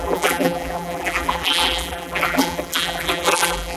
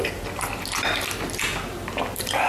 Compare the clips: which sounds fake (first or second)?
first